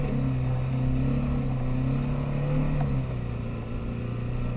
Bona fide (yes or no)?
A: yes